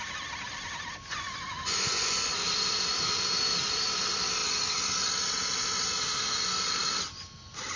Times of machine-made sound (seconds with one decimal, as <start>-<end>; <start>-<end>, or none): 1.1-2.3